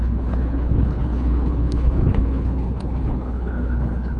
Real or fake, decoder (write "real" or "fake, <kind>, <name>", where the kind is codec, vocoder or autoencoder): fake, codec, HILCodec